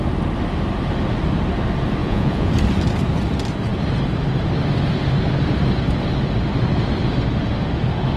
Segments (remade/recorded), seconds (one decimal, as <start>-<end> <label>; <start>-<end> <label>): 0.0-2.0 recorded; 2.0-2.5 remade; 2.5-8.2 recorded